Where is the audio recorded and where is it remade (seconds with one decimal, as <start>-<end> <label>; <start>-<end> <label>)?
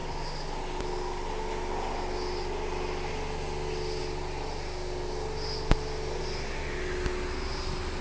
0.0-8.0 recorded